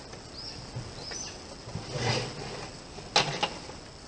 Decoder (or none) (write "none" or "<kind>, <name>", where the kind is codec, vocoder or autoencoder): none